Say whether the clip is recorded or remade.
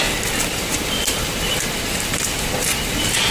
recorded